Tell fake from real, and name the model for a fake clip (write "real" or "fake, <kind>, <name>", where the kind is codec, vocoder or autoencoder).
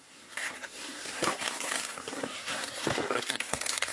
fake, codec, SNAC